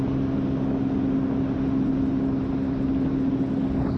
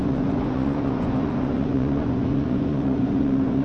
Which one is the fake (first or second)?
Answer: second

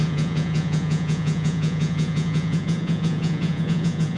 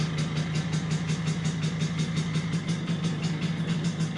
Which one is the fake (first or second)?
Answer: first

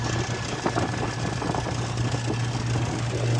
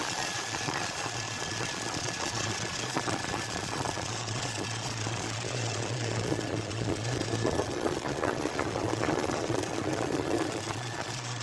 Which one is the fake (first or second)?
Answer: second